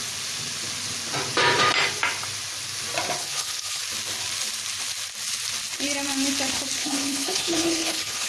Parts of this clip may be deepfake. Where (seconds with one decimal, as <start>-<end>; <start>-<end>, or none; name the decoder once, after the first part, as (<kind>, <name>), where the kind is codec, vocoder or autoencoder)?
3.2-3.8 (codec, HILCodec); 6.8-8.3